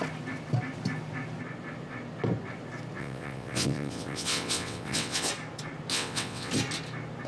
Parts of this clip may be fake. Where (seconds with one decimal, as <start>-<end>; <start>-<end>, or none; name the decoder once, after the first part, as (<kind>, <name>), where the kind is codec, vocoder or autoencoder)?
3.0-5.3 (vocoder, WaveNeXt); 5.9-6.5